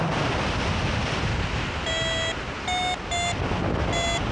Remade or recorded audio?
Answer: recorded